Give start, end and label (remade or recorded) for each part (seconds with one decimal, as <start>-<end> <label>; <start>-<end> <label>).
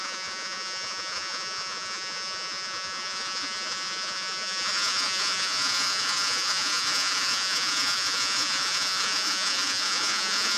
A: 0.0-10.6 remade